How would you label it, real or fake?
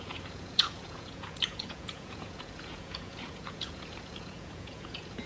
fake